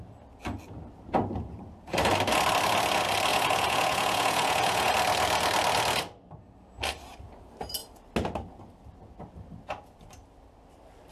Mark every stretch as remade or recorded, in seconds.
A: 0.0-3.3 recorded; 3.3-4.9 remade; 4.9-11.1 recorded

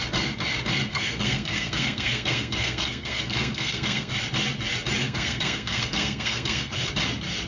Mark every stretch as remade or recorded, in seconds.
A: 0.0-0.9 recorded; 0.9-4.1 remade; 4.1-5.0 recorded; 5.0-6.9 remade; 6.9-7.5 recorded

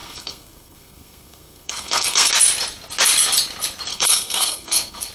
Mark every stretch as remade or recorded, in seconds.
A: 0.0-2.3 remade; 2.3-3.9 recorded; 3.9-5.1 remade

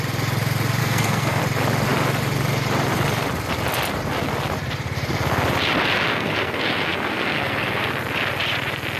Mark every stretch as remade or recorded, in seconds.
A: 0.0-0.8 recorded; 0.8-1.4 remade; 1.4-6.1 recorded; 6.1-7.9 remade; 7.9-9.0 recorded